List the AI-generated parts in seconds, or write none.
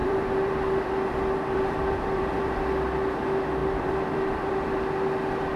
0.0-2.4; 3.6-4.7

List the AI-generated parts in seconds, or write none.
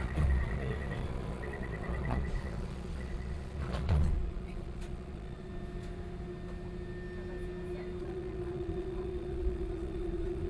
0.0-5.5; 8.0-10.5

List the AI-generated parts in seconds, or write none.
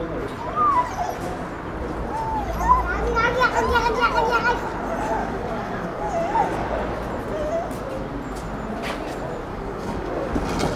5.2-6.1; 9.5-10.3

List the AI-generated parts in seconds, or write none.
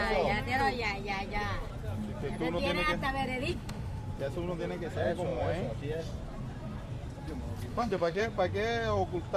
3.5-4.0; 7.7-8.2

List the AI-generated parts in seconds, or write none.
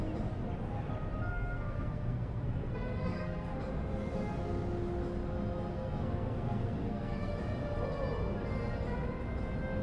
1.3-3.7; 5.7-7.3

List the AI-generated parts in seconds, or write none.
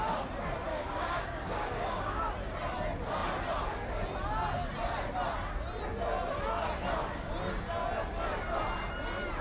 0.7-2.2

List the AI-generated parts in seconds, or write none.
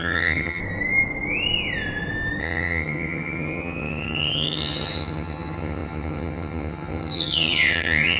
0.0-0.6; 2.4-8.2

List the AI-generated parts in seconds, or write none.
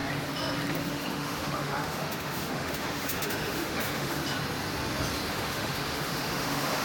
0.9-4.2; 5.3-6.8